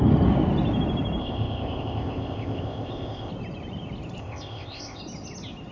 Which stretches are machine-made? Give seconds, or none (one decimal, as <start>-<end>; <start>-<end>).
1.2-3.3; 4.2-5.0